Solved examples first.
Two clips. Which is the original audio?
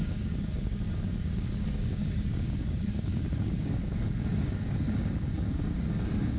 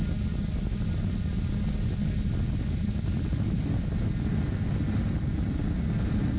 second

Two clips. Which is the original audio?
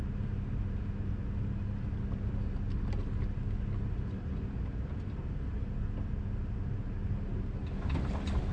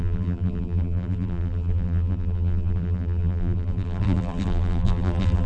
first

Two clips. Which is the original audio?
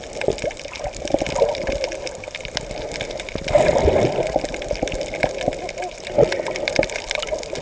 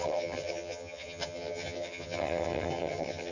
first